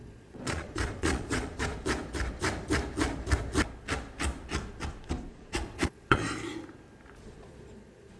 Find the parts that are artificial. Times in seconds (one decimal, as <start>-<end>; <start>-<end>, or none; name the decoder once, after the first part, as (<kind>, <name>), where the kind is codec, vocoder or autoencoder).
0.0-1.7 (vocoder, Vocos); 5.3-6.2; 7.2-8.2